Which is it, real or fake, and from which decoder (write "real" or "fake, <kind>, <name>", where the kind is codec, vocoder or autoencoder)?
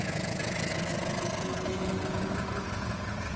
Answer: fake, vocoder, Vocos